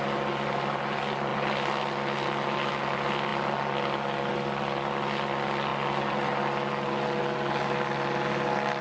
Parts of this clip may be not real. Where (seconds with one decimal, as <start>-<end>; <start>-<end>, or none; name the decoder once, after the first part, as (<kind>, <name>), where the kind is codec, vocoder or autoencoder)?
none